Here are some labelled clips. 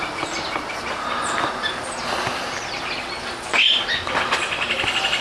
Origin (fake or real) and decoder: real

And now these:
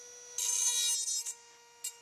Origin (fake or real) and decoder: real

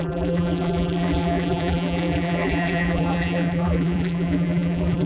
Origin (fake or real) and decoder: fake, vocoder, BigVGAN v2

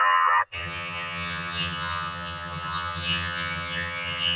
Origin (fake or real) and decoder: fake, vocoder, HiFi-GAN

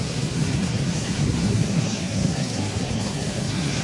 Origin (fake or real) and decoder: fake, codec, SNAC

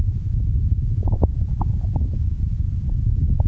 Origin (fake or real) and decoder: fake, vocoder, Vocos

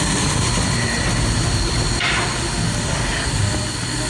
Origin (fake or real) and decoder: real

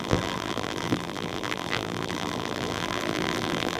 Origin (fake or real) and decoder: fake, vocoder, BigVGAN v2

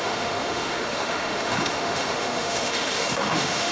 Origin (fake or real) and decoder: fake, autoencoder, DAC-VAE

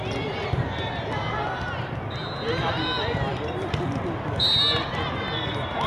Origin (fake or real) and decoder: real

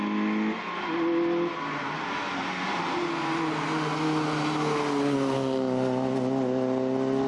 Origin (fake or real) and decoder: real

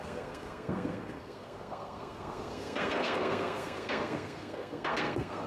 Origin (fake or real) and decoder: fake, codec, SNAC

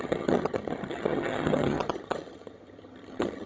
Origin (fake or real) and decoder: fake, vocoder, HiFi-GAN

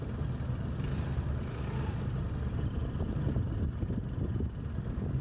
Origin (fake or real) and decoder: real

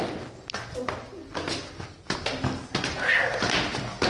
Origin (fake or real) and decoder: real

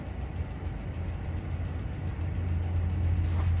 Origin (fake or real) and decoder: real